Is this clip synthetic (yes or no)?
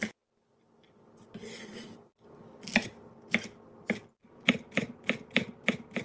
no